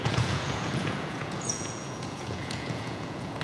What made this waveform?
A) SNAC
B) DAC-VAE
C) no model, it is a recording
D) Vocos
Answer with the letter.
D